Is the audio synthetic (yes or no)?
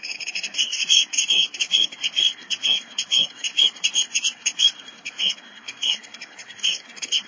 yes